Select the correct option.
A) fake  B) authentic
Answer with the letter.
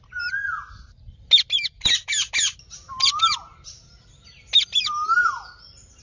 B